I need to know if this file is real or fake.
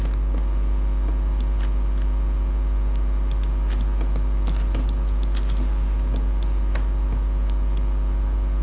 real